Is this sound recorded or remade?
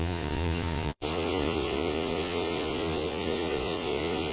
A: remade